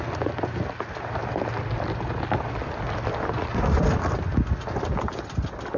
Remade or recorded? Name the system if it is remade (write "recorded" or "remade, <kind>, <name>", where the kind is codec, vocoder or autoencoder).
recorded